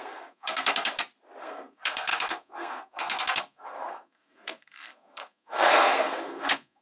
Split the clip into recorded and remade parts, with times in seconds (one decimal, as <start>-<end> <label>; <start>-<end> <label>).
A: 0.0-0.9 remade; 0.9-1.4 recorded; 1.4-6.8 remade